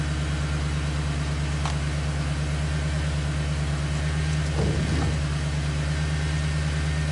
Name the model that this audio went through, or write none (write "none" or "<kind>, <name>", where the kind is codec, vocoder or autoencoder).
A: none